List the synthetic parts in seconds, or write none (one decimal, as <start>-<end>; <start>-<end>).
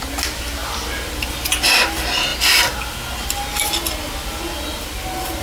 none